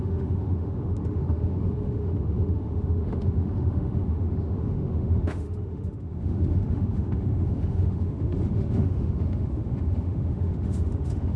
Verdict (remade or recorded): remade